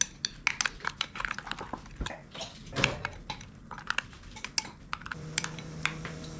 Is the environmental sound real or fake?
real